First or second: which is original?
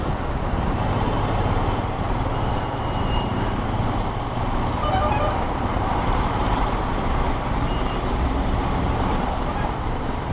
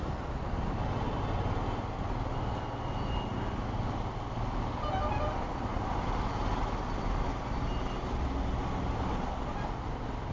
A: second